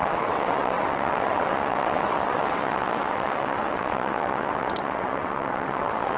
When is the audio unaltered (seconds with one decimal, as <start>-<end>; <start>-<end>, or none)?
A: none